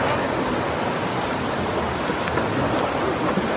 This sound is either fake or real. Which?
real